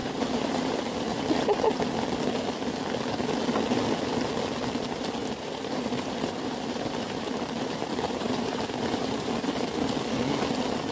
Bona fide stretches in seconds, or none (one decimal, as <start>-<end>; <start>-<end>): 1.2-5.2; 9.3-10.9